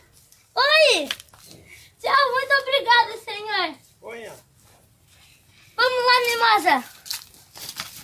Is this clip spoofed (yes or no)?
no